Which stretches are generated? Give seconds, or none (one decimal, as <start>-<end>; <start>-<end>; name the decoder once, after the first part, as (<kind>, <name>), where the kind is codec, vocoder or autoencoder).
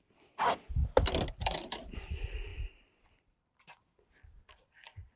0.0-0.8 (vocoder, BigVGAN v2); 1.3-5.2